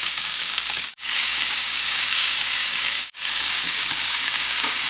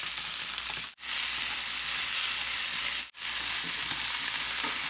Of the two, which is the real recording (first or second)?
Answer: second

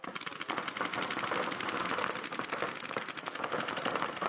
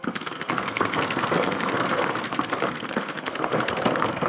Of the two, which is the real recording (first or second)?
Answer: first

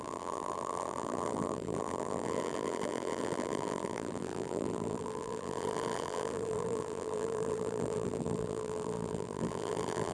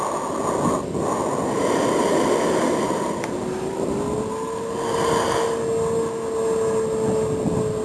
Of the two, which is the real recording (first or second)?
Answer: second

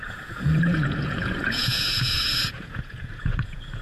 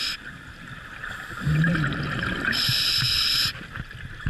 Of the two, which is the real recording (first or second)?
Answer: second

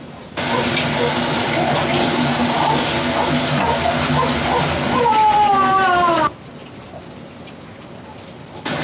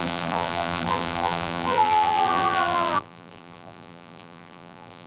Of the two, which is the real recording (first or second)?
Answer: first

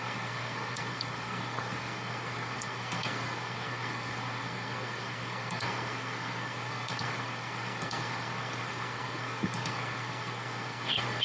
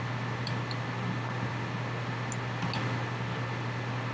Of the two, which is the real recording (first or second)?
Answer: second